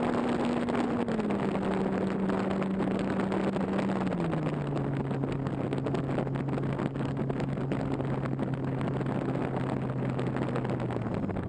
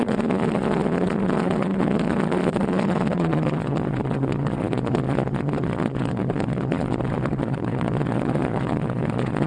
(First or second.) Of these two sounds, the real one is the first